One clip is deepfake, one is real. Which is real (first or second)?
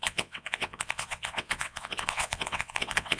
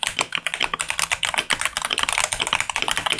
second